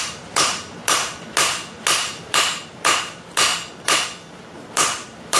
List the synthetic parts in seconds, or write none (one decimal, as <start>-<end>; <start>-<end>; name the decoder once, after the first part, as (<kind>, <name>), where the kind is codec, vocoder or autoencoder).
0.0-0.8 (vocoder, BigVGAN v2); 2.3-3.5; 4.3-5.4